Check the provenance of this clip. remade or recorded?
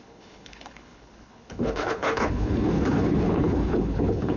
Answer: remade